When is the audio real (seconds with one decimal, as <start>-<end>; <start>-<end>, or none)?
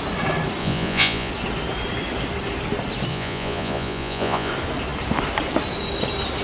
0.0-0.6; 1.3-3.1; 4.5-6.4